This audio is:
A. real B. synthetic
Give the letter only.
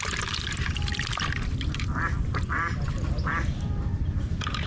B